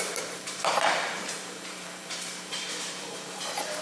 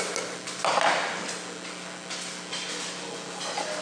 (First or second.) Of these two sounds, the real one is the second